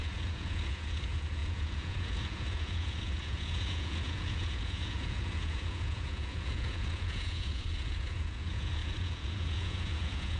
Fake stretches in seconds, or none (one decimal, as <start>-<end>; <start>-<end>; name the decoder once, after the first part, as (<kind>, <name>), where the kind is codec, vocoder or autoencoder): 0.0-10.4 (vocoder, Vocos)